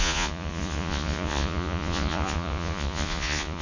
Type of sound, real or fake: fake